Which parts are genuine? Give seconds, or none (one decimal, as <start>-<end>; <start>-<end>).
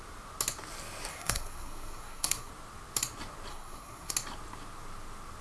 0.0-1.1; 2.5-3.5; 4.1-5.4